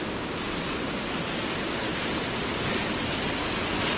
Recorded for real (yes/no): yes